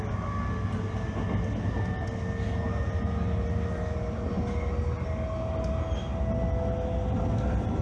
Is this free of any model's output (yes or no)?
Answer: yes